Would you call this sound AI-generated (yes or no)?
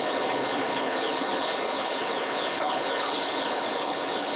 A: yes